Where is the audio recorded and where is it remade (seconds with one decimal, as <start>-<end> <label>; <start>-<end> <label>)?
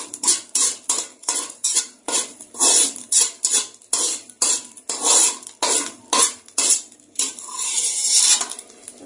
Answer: 0.0-1.2 recorded; 1.2-1.8 remade; 1.8-9.1 recorded